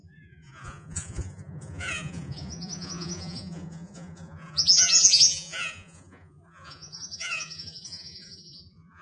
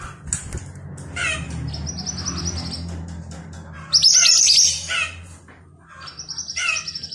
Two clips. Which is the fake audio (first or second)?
first